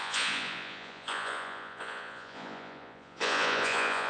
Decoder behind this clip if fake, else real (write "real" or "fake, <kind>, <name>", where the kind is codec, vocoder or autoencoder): fake, vocoder, Vocos